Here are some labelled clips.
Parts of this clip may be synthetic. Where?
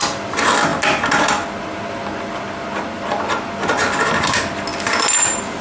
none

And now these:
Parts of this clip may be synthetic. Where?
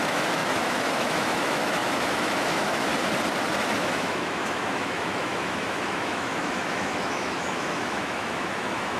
0.0-2.9 (autoencoder, DAC-VAE); 3.8-9.0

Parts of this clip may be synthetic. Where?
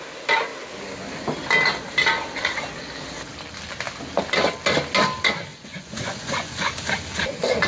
5.5-6.7 (vocoder, Vocos)